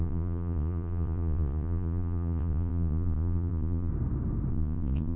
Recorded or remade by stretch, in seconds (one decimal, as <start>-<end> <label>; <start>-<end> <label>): 0.0-3.9 remade; 3.9-4.5 recorded; 4.5-5.2 remade

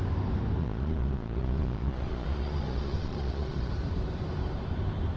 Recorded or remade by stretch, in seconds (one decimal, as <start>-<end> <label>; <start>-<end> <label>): 0.0-0.6 recorded; 0.6-3.7 remade; 3.7-5.2 recorded

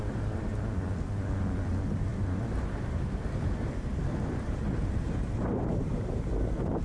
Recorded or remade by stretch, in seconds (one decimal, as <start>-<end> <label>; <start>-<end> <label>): 0.0-2.1 recorded; 2.1-6.2 remade; 6.2-6.8 recorded

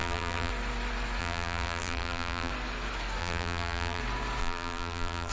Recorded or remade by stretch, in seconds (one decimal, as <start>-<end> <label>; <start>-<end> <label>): 0.0-0.5 remade; 0.5-1.2 recorded; 1.2-2.5 remade; 2.5-3.2 recorded; 3.2-4.0 remade; 4.0-4.4 recorded; 4.4-5.3 remade

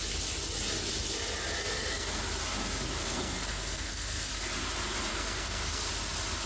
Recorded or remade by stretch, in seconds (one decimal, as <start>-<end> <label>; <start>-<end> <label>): 0.0-1.6 recorded; 1.6-2.2 remade; 2.2-3.0 recorded; 3.0-4.3 remade; 4.3-5.1 recorded; 5.1-5.9 remade; 5.9-6.5 recorded

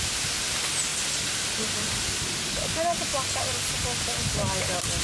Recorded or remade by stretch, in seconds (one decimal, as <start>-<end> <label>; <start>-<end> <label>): 0.0-0.9 recorded; 0.9-2.4 remade; 2.4-5.0 recorded

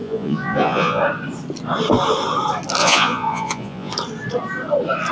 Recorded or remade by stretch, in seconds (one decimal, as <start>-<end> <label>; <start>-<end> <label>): 0.0-1.0 remade; 1.0-2.8 recorded; 2.8-3.9 remade; 3.9-5.1 recorded